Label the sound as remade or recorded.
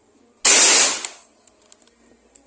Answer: recorded